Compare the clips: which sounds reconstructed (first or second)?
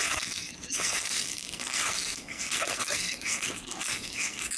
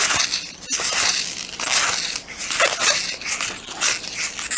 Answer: first